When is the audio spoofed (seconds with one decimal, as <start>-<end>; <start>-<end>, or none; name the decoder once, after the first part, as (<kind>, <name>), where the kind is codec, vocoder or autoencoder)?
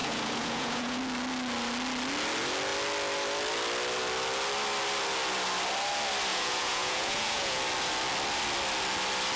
0.0-1.0 (vocoder, Vocos); 6.3-7.6